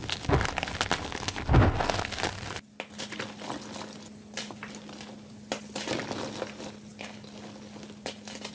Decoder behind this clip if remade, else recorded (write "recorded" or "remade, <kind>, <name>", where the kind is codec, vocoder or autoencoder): recorded